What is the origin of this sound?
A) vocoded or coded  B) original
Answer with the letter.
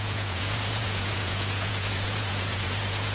A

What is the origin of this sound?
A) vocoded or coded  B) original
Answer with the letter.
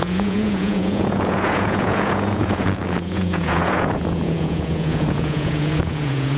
A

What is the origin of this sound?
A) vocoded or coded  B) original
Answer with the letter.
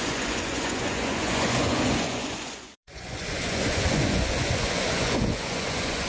A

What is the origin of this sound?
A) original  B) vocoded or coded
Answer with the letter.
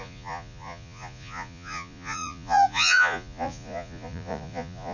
B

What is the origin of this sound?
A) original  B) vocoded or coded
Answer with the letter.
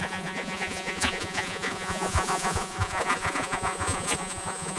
B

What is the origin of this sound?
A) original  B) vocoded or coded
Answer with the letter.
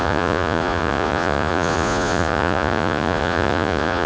B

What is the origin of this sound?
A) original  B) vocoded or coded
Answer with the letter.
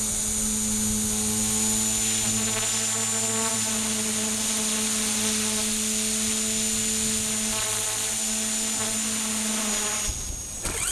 A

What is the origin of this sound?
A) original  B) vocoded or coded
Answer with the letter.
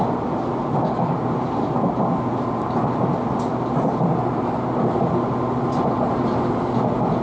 A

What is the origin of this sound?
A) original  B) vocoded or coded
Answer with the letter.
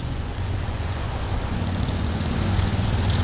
B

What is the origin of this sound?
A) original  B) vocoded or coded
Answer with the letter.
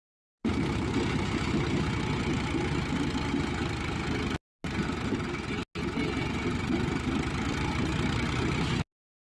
A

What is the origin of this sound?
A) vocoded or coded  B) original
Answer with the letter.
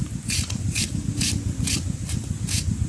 B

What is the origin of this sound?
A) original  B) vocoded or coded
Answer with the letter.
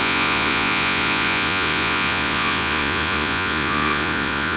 B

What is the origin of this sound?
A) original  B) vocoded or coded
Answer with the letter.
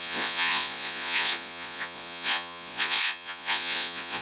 B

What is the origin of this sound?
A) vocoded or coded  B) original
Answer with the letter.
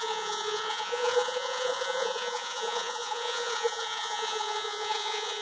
A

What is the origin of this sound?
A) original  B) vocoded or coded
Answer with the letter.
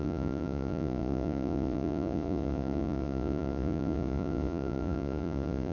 B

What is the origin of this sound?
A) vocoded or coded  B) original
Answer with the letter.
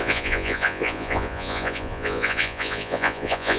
A